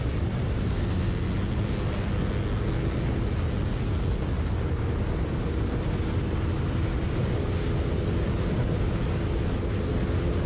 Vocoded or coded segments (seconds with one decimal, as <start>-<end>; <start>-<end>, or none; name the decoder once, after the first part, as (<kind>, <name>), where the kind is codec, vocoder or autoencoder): none